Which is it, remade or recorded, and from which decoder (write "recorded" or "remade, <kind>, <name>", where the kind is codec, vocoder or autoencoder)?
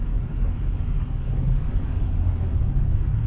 remade, codec, DAC